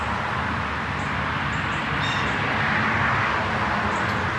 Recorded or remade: recorded